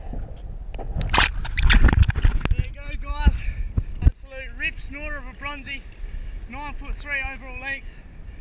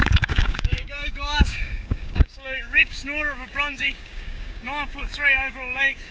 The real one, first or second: first